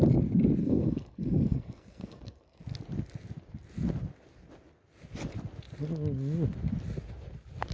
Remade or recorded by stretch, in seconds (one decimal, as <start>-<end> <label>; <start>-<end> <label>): 0.0-0.6 recorded; 0.6-2.6 remade; 2.6-7.7 recorded